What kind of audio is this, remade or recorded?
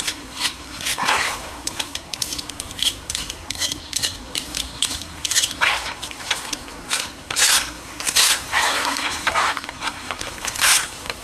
remade